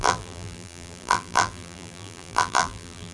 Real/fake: fake